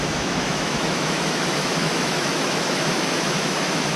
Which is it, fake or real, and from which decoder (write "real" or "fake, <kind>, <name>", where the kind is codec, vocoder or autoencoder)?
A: fake, autoencoder, DAC-VAE